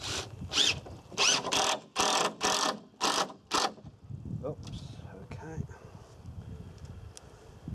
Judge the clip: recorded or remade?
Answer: recorded